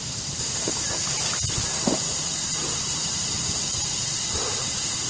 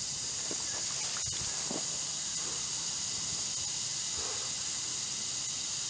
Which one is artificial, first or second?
first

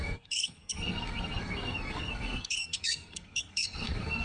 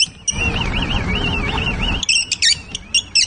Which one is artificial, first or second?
first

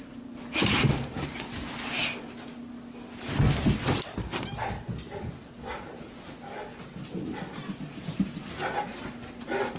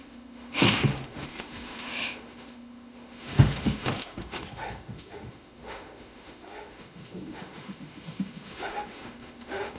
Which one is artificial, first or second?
second